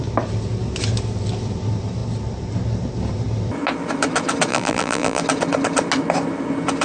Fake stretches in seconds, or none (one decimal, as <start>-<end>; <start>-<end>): 4.5-5.2